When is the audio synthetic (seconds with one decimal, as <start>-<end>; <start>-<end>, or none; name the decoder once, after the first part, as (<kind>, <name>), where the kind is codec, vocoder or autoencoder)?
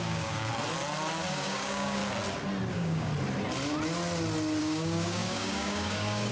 0.0-0.5 (codec, DAC); 1.3-2.0; 2.7-3.1; 4.6-6.3